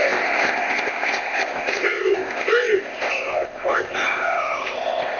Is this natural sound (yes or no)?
no